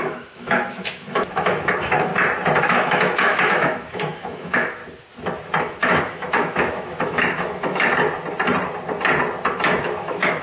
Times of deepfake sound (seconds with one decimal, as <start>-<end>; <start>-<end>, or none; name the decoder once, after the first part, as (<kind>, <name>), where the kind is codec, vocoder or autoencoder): 0.0-2.1 (autoencoder, DAC-VAE); 2.6-4.8; 5.6-7.9; 9.8-10.4